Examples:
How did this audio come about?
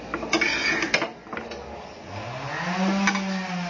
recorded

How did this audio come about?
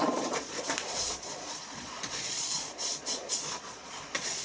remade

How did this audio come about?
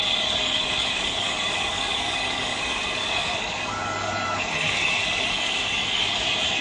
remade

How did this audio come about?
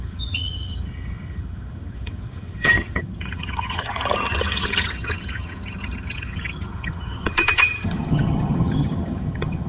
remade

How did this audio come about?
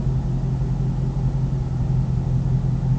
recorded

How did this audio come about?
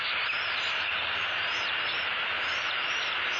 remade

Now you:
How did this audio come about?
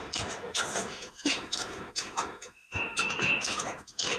remade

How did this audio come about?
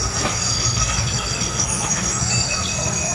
remade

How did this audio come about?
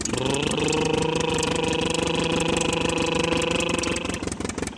recorded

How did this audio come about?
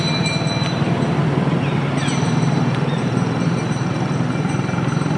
recorded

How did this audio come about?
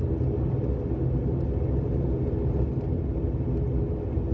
recorded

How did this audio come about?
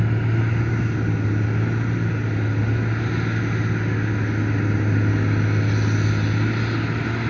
recorded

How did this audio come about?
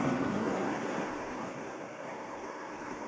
remade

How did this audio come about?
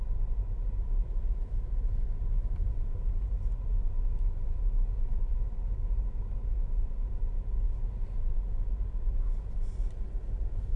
recorded